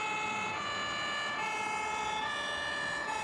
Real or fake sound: real